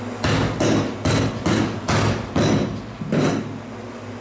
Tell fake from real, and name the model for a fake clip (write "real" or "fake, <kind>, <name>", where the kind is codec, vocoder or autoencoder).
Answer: real